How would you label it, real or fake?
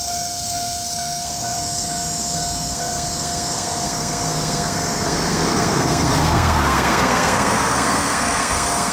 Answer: fake